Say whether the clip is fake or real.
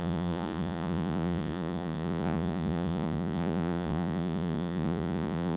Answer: fake